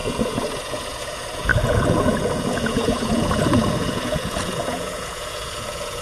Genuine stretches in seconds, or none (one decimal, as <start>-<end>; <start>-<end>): none